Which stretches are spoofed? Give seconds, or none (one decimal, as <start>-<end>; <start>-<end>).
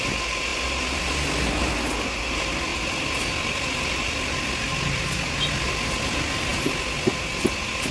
none